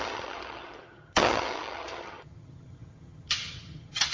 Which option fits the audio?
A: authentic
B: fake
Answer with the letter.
B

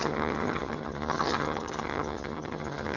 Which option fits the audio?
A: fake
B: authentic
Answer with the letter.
A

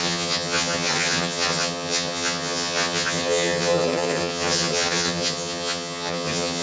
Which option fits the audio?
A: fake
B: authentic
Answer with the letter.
A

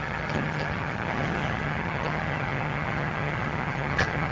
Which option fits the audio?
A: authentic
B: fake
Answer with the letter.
B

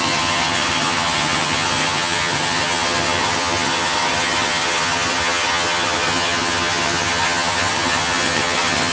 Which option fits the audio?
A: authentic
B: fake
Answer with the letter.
B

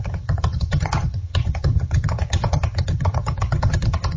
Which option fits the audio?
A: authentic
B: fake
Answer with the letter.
B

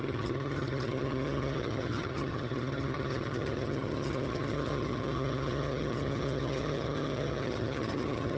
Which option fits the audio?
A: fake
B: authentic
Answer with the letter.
A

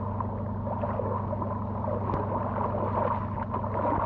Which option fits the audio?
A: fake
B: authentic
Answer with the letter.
B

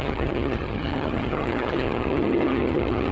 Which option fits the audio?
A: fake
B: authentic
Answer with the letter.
A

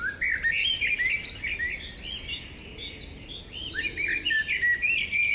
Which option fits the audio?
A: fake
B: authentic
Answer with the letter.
B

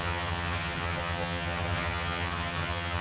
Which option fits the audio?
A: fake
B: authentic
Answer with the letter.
A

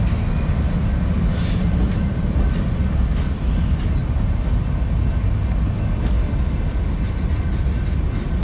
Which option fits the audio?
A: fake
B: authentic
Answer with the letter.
B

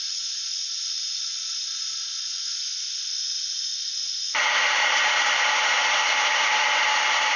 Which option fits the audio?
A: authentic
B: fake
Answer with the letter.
A